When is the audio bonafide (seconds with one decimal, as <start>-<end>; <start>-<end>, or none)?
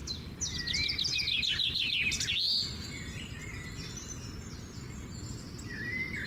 0.0-6.3